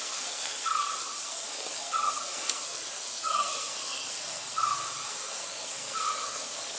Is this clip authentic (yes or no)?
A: no